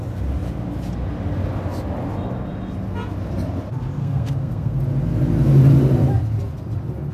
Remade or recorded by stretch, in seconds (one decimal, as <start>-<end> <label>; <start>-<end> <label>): 0.0-4.0 recorded; 4.0-4.8 remade; 4.8-7.1 recorded